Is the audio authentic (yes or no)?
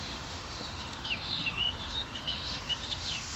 no